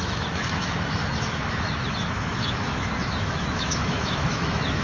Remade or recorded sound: remade